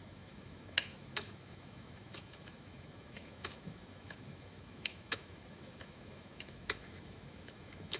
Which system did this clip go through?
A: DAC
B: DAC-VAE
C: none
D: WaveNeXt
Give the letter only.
B